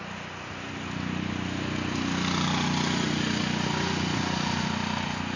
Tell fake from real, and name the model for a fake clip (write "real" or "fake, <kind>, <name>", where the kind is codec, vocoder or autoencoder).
real